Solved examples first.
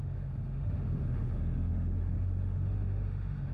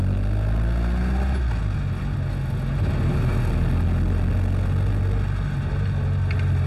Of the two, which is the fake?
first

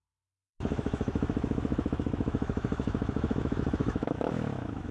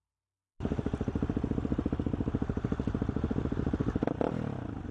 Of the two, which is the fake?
first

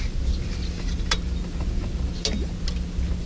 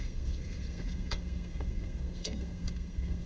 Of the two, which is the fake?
second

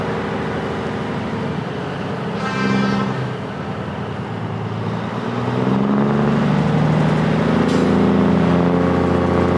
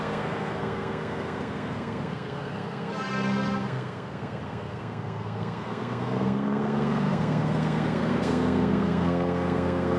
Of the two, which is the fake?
second